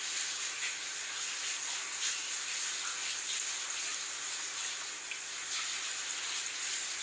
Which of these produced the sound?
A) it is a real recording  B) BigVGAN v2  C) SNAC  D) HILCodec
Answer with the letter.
A